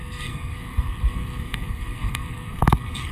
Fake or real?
fake